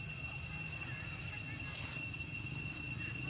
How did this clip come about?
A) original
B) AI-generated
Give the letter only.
A